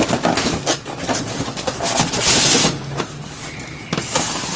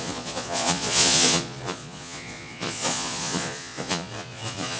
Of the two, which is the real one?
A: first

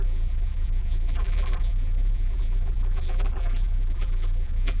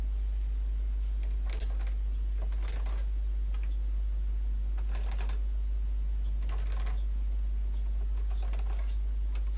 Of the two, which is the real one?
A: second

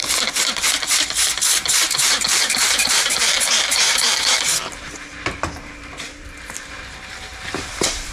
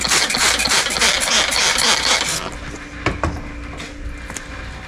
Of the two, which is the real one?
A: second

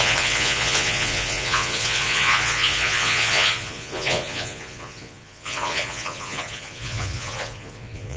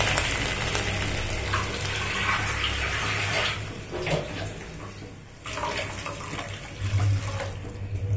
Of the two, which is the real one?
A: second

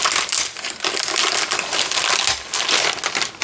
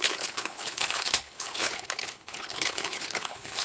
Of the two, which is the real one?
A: first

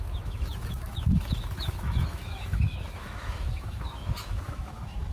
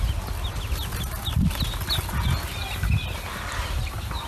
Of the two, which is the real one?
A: second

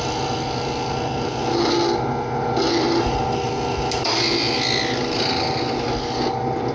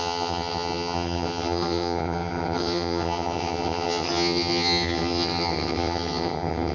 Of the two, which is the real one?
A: first